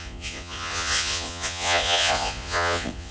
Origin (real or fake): fake